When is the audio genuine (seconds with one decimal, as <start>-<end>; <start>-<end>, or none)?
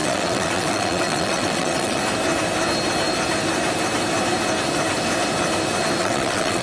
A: 2.0-6.0